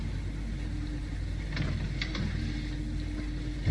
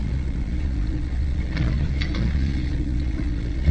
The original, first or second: first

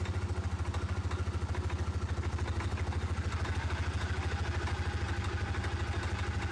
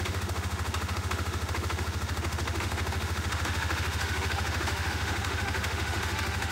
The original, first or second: first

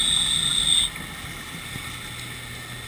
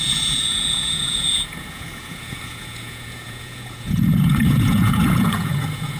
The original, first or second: first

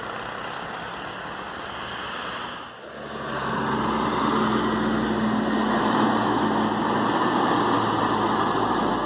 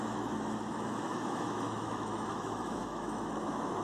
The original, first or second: first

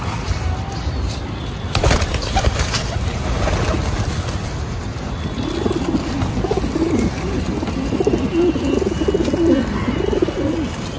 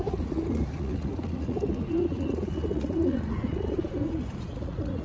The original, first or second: first